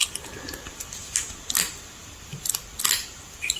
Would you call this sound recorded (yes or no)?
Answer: yes